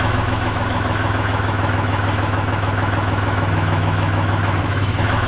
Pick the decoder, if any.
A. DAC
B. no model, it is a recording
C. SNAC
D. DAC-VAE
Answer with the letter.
D